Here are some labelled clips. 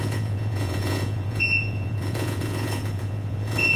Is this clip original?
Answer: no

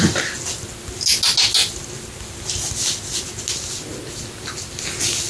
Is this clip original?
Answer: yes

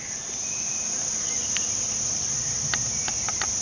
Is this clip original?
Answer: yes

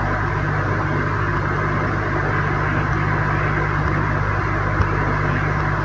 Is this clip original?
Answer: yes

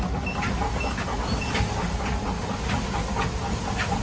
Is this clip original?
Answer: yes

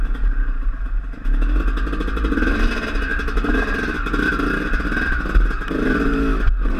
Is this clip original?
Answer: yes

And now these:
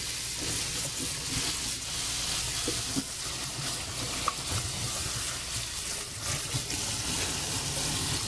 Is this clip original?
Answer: yes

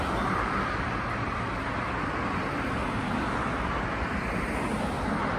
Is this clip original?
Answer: yes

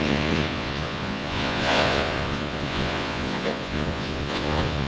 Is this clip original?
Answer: no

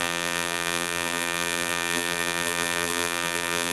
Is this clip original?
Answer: no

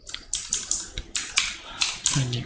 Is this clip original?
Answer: yes